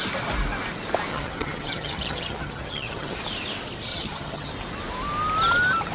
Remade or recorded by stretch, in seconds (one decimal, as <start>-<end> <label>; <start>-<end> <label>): 0.0-1.1 recorded; 1.1-3.2 remade; 3.2-3.9 recorded; 3.9-4.5 remade; 4.5-5.9 recorded